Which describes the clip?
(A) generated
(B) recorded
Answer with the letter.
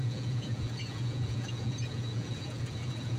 A